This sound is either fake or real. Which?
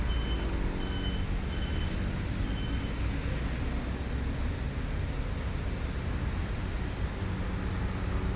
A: real